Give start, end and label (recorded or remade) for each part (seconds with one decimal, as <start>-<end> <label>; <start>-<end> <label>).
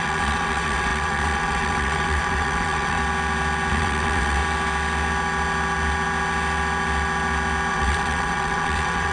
0.0-3.0 remade; 3.0-3.7 recorded; 3.7-4.4 remade; 4.4-7.7 recorded; 7.7-9.1 remade